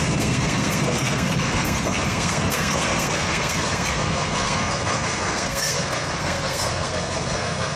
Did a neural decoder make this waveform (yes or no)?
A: yes